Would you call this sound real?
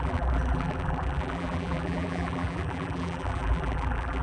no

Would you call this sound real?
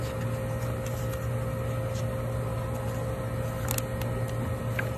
yes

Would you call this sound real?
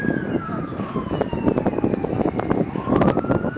yes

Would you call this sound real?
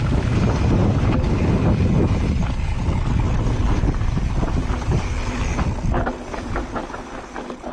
yes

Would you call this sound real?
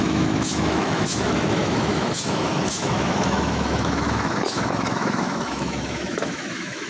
no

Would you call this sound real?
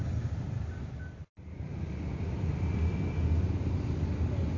yes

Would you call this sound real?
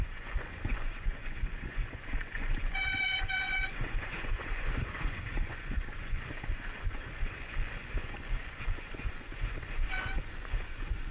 no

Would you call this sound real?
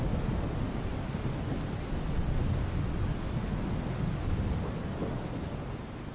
yes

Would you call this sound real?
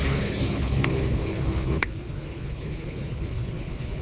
no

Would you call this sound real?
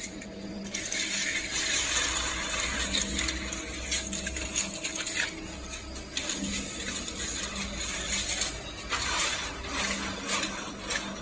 yes